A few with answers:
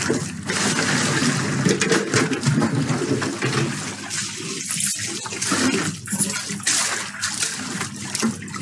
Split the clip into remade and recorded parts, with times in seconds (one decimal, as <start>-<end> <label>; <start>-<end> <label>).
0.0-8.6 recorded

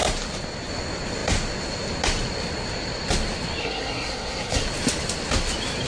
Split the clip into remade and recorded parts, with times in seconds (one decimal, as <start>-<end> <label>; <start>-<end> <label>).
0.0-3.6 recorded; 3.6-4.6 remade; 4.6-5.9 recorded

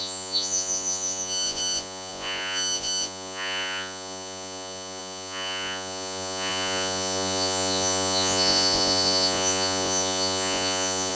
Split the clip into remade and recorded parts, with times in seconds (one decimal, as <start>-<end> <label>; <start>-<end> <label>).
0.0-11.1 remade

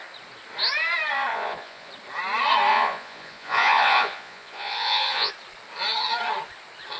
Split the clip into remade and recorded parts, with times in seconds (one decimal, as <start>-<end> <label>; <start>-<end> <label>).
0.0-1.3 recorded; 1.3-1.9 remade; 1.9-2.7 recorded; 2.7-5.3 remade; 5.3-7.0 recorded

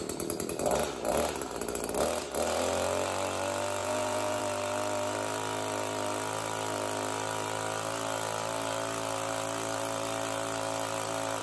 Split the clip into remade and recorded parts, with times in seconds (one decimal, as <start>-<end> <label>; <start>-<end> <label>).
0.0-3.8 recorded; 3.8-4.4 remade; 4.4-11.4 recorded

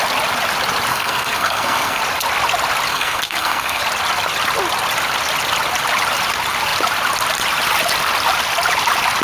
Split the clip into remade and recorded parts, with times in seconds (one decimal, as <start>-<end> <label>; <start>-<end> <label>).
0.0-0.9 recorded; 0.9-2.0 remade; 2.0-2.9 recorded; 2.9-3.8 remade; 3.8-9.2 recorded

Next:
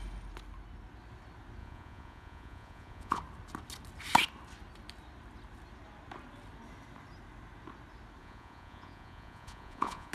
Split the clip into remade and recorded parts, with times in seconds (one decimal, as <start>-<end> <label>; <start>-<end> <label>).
0.0-1.6 recorded; 1.6-3.2 remade; 3.2-8.2 recorded; 8.2-10.1 remade